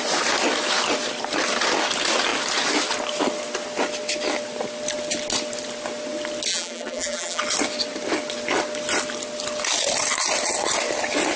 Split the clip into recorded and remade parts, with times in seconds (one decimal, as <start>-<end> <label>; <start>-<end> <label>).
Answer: 0.0-6.5 recorded; 6.5-7.4 remade; 7.4-11.4 recorded